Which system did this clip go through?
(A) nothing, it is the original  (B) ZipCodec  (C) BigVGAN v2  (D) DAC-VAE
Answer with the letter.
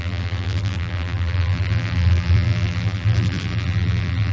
C